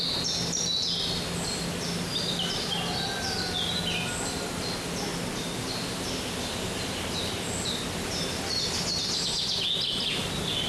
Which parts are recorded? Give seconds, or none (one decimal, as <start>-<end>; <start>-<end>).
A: 0.0-10.7